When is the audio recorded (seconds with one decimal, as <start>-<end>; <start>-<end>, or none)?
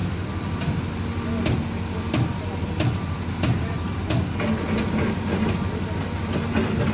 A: 0.0-6.9